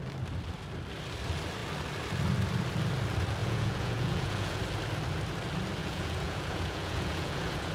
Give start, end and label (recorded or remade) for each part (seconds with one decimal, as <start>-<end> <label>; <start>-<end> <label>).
0.0-3.4 recorded; 3.4-4.6 remade; 4.6-5.8 recorded; 5.8-7.7 remade